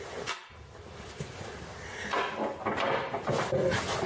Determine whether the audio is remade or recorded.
recorded